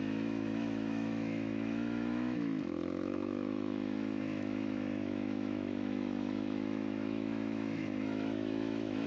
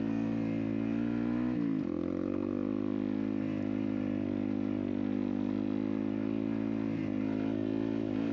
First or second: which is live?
second